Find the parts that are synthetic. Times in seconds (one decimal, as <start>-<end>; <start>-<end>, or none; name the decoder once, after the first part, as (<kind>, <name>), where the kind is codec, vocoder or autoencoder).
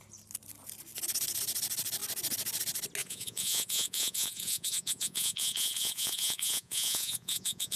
3.0-7.8 (vocoder, Vocos)